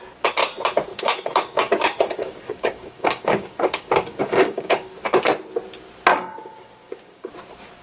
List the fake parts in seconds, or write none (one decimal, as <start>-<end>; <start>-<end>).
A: 0.9-4.9; 6.1-7.3